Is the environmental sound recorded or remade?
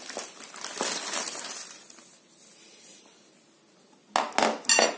recorded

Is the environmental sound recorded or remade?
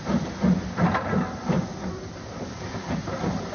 recorded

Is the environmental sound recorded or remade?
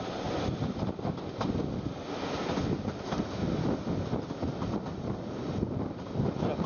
recorded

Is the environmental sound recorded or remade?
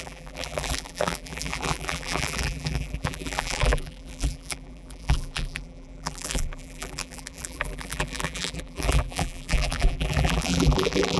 remade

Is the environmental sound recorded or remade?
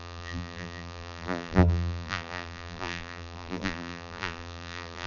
remade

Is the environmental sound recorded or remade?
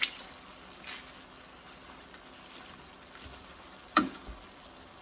recorded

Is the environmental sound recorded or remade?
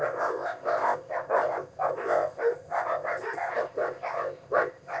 remade